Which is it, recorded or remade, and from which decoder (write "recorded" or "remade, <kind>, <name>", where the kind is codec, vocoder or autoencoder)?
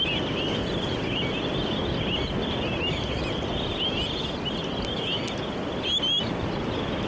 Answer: recorded